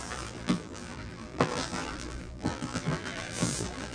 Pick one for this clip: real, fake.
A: fake